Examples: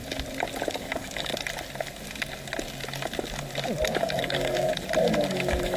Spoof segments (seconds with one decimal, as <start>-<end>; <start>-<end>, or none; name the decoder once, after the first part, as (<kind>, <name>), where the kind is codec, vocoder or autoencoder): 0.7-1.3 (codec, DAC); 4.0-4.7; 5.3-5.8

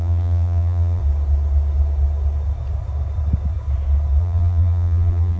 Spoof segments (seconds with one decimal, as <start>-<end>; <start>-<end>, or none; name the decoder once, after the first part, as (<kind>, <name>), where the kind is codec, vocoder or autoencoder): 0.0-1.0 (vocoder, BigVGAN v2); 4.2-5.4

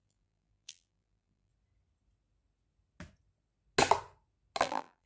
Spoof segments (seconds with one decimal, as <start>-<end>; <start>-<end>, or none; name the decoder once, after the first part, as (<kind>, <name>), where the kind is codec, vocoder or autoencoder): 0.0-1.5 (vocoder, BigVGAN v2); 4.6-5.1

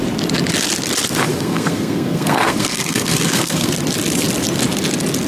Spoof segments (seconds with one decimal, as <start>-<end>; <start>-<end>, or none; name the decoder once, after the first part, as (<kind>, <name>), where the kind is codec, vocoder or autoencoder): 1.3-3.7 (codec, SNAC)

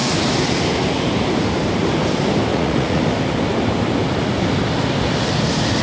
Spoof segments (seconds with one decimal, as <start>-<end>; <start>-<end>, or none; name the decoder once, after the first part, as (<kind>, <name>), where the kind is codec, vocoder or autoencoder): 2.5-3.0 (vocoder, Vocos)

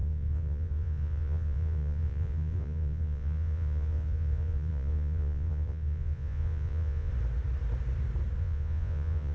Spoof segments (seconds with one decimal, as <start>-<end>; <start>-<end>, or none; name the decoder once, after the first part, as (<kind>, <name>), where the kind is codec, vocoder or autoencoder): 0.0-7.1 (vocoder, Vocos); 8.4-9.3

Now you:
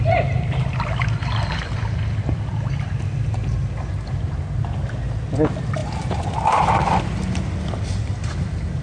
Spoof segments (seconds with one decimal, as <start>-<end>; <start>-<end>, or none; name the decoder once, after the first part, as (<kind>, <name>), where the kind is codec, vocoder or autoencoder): none

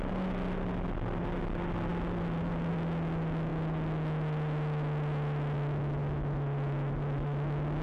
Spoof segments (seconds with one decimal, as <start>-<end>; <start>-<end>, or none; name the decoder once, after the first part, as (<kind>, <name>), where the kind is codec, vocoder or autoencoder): none